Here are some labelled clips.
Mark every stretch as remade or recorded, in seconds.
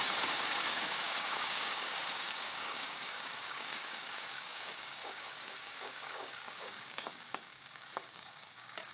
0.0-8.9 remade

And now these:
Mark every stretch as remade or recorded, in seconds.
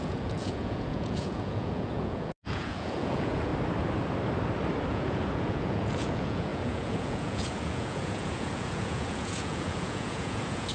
0.0-3.5 remade; 3.5-4.9 recorded; 4.9-10.7 remade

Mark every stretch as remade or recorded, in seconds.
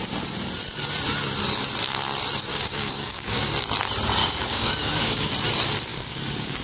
0.0-2.5 recorded; 2.5-3.5 remade; 3.5-4.2 recorded; 4.2-5.3 remade; 5.3-5.9 recorded; 5.9-6.6 remade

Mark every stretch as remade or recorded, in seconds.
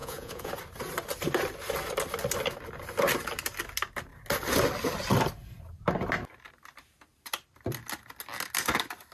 0.0-0.5 remade; 0.5-9.1 recorded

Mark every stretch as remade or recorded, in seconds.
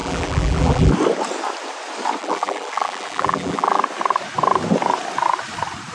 0.0-0.9 remade; 0.9-2.2 recorded; 2.2-3.8 remade; 3.8-5.9 recorded